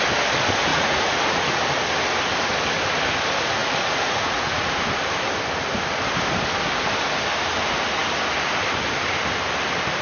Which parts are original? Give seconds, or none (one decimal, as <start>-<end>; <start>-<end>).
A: 0.0-0.7; 1.6-3.6; 4.7-10.0